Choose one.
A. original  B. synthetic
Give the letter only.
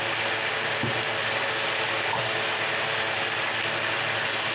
A